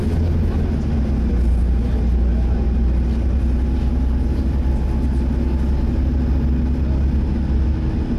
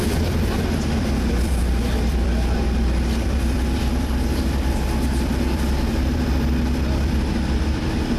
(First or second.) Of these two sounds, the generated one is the second